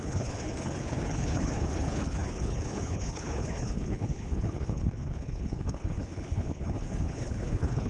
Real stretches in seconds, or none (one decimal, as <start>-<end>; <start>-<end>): none